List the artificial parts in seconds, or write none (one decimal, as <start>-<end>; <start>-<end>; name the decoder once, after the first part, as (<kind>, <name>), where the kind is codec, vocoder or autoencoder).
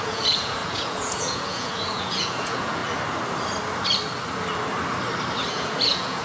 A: 0.0-2.8 (vocoder, Vocos); 5.5-6.2